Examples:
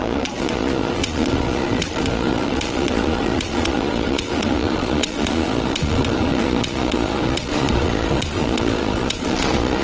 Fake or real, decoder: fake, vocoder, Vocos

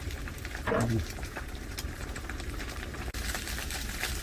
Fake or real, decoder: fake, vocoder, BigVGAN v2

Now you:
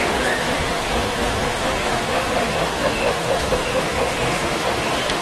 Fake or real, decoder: fake, autoencoder, DAC-VAE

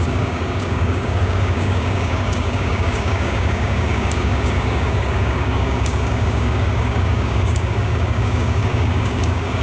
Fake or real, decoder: fake, codec, DAC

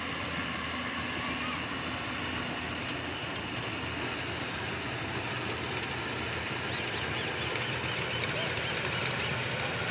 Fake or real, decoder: real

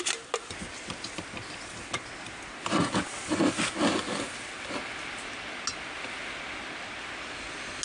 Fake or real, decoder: real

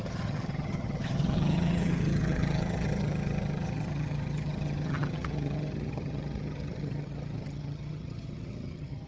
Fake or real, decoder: fake, vocoder, HiFi-GAN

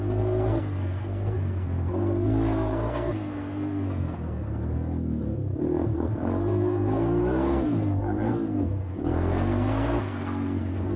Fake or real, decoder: fake, codec, SNAC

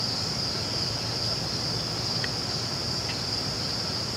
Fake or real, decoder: real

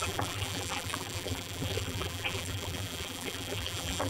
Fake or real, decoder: fake, vocoder, BigVGAN v2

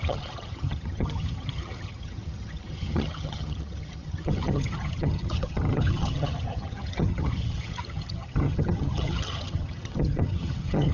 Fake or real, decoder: fake, vocoder, HiFi-GAN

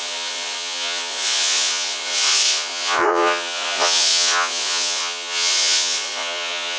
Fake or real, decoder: fake, vocoder, Vocos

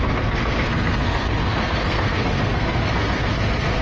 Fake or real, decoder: fake, codec, SNAC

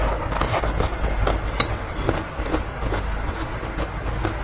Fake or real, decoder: real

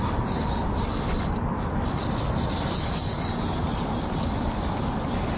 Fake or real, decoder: real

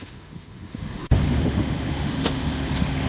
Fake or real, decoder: fake, autoencoder, DAC-VAE